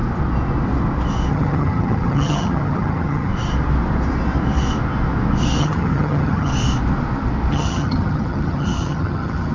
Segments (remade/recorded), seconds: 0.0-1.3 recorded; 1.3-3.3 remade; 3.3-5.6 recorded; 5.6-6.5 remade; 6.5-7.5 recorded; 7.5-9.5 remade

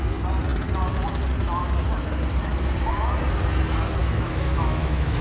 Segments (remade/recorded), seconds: 0.0-4.0 recorded; 4.0-5.2 remade

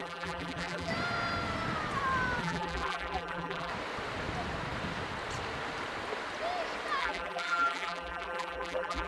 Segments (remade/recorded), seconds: 0.0-0.9 remade; 0.9-2.4 recorded; 2.4-3.7 remade; 3.7-7.0 recorded; 7.0-9.1 remade

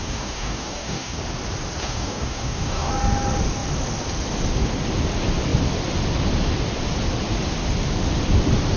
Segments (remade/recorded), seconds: 0.0-1.2 remade; 1.2-1.8 recorded; 1.8-2.9 remade; 2.9-8.8 recorded

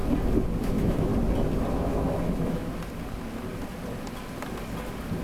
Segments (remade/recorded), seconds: 0.0-0.6 recorded; 0.6-1.1 remade; 1.1-1.7 recorded; 1.7-2.7 remade; 2.7-5.2 recorded

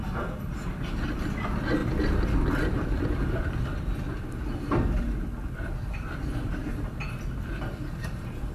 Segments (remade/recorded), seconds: 0.0-8.5 recorded